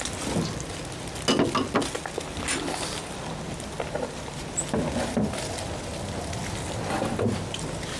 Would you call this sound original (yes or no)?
yes